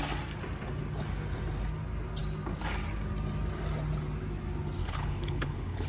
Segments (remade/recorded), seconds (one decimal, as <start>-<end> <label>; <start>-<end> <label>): 0.0-4.8 recorded; 4.8-5.9 remade